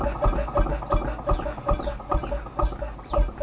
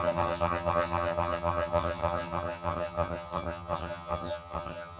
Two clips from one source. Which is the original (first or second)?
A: first